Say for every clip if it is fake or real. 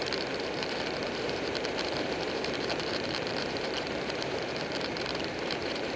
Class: fake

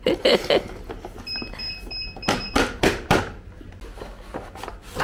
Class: real